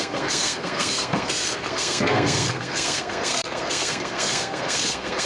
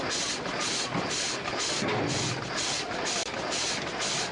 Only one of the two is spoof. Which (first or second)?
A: first